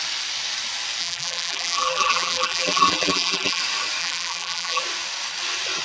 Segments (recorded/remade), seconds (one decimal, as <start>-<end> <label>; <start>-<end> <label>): 0.0-1.0 recorded; 1.0-3.6 remade; 3.6-4.0 recorded; 4.0-4.8 remade; 4.8-5.8 recorded